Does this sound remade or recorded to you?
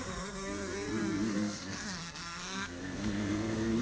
remade